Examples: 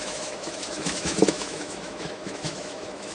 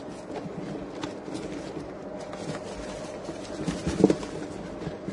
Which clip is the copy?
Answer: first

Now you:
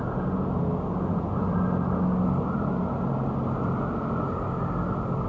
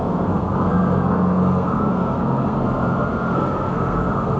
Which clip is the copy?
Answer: second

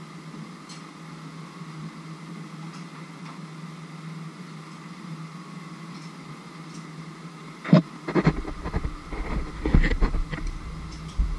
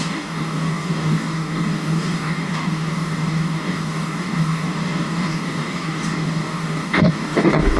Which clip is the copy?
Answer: second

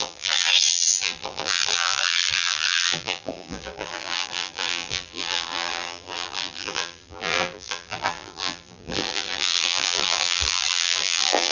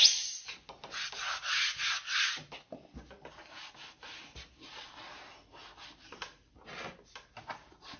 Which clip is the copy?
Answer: first